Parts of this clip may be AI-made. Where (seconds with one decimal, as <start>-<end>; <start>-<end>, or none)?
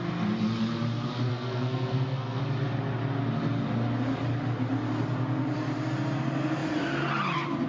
1.3-2.4